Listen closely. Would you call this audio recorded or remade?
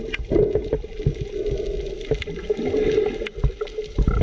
recorded